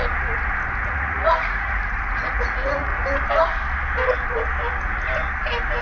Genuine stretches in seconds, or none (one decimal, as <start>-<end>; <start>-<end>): 0.0-0.8; 2.9-5.8